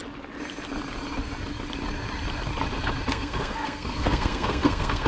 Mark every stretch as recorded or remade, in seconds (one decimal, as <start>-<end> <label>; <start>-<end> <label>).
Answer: 0.0-3.1 recorded; 3.1-5.1 remade